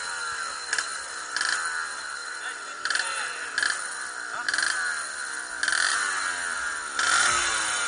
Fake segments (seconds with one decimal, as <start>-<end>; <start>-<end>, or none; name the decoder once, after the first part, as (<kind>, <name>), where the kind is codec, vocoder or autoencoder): 2.2-3.2 (vocoder, BigVGAN v2)